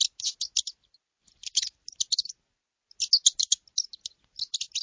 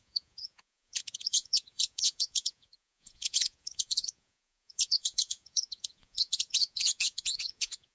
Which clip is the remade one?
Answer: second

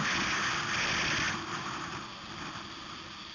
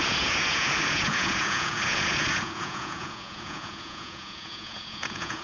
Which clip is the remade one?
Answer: second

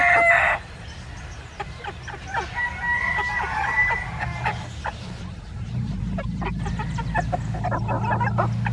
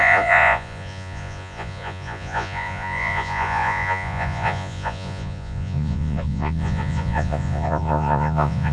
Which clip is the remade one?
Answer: second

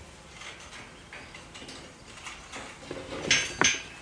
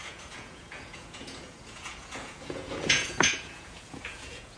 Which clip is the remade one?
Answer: second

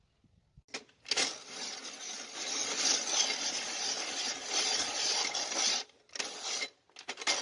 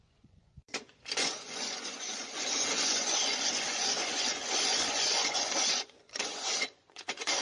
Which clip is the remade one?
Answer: second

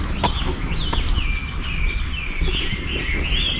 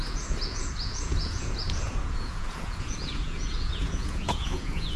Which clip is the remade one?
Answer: second